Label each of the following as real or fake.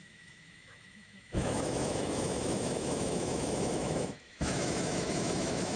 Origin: fake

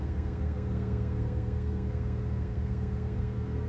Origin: fake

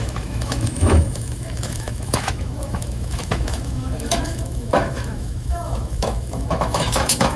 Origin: fake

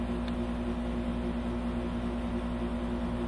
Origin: real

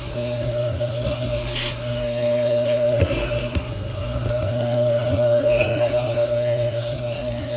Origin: fake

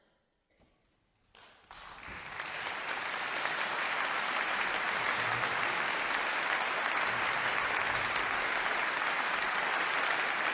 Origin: real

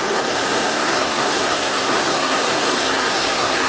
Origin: fake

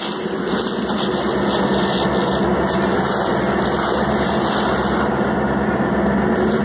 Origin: real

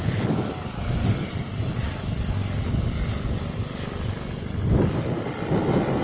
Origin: real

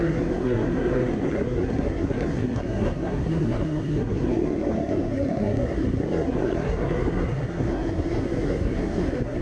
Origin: fake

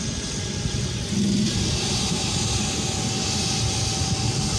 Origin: real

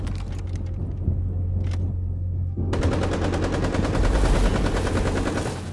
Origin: real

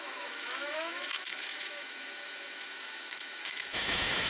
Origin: fake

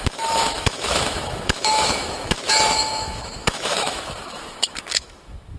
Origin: fake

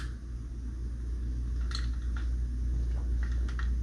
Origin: real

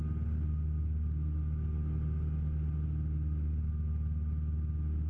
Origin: real